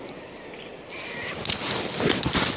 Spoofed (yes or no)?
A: no